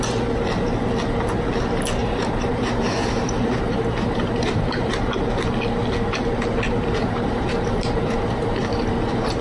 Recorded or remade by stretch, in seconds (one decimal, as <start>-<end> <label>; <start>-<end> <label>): 0.0-2.0 recorded; 2.0-5.0 remade; 5.0-7.0 recorded; 7.0-8.9 remade; 8.9-9.4 recorded